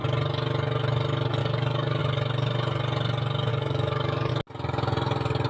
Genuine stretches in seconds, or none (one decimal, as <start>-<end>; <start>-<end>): 0.0-1.4; 2.0-3.5; 4.3-5.5

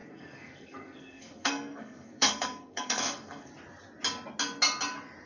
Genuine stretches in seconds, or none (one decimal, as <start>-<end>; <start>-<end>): 3.5-5.3

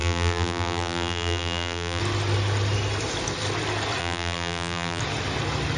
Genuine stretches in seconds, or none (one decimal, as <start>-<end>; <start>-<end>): 2.0-4.0; 5.0-5.8